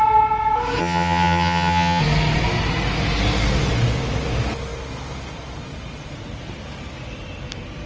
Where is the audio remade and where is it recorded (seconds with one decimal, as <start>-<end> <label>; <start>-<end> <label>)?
0.0-0.8 recorded; 0.8-2.0 remade; 2.0-7.9 recorded